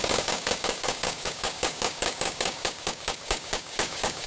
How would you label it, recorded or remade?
remade